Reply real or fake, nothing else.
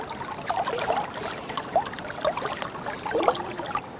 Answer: real